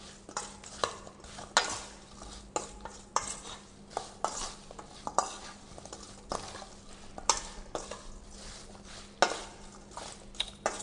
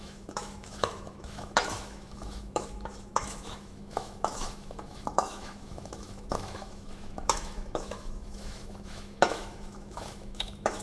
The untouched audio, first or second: first